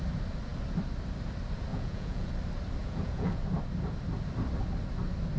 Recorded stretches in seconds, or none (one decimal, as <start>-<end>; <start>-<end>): 0.0-1.7; 2.3-2.8; 3.4-5.4